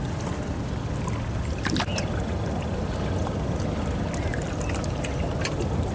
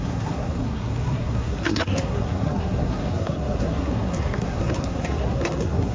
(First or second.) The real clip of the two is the first